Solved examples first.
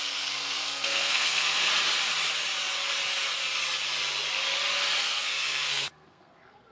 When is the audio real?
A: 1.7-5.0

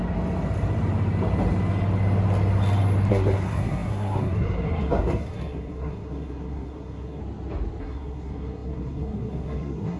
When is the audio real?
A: 0.0-3.1; 7.2-7.8

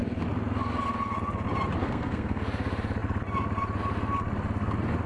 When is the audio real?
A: 0.0-1.8; 2.4-5.1

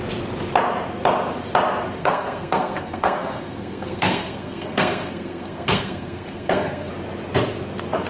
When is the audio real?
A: 0.0-2.0; 6.9-8.1

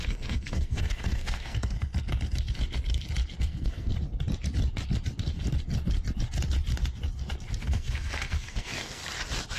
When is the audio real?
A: 1.9-3.4; 3.9-7.6; 9.0-9.6

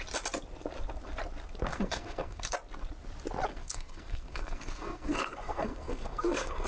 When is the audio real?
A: 0.0-1.7; 2.5-3.5